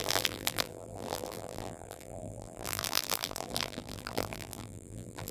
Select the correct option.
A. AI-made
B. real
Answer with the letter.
A